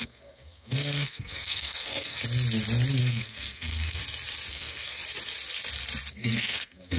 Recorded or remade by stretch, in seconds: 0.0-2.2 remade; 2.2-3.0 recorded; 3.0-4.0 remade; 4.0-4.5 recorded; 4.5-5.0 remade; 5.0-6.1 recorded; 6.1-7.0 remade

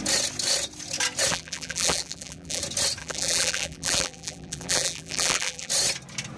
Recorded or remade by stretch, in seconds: 0.0-1.3 recorded; 1.3-2.6 remade; 2.6-3.0 recorded; 3.0-5.7 remade; 5.7-6.4 recorded

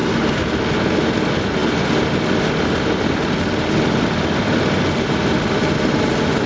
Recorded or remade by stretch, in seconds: 0.0-6.5 recorded

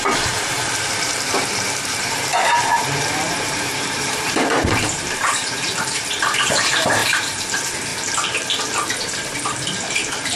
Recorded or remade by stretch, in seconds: 0.0-7.9 remade; 7.9-9.0 recorded; 9.0-10.4 remade

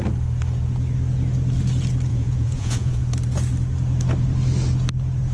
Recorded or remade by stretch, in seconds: 0.0-2.1 recorded; 2.1-3.0 remade; 3.0-5.3 recorded

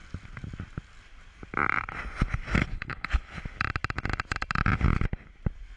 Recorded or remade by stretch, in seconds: 0.0-2.6 recorded; 2.6-3.4 remade; 3.4-5.8 recorded

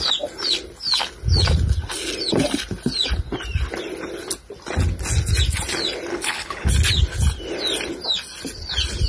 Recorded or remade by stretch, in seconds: 0.0-6.1 recorded; 6.1-6.7 remade; 6.7-9.1 recorded

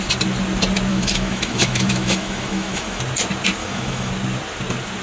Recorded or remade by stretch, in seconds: 0.0-0.9 recorded; 0.9-3.0 remade; 3.0-3.6 recorded; 3.6-4.1 remade; 4.1-5.0 recorded